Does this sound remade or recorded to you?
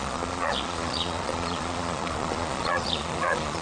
remade